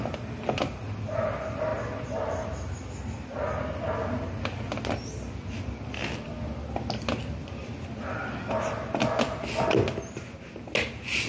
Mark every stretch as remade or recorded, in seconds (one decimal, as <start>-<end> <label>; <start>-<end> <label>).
0.0-11.3 recorded